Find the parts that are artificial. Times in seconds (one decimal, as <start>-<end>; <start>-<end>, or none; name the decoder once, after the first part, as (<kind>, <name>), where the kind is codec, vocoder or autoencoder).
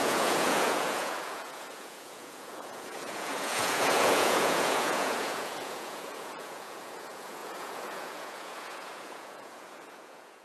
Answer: 0.0-10.4 (vocoder, Vocos)